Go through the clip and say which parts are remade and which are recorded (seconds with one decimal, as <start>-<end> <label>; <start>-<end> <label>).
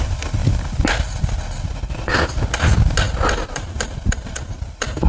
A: 0.0-0.4 remade; 0.4-3.5 recorded; 3.5-5.1 remade